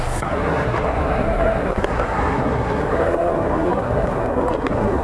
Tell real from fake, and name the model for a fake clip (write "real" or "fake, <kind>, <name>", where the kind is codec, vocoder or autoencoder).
fake, codec, SNAC